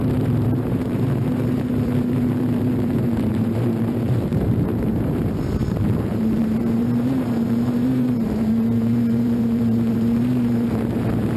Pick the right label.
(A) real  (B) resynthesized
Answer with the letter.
B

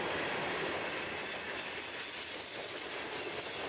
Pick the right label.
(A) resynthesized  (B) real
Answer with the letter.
B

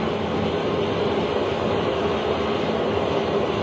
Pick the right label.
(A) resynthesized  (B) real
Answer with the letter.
B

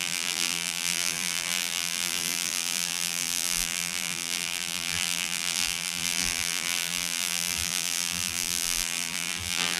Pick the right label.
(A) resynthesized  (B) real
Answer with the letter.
A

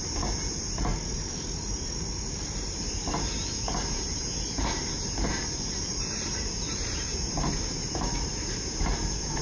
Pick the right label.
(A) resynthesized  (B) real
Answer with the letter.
A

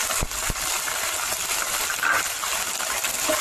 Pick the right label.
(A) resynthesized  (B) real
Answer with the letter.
B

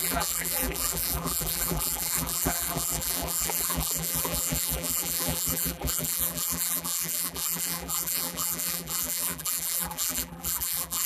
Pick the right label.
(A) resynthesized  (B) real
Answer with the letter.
A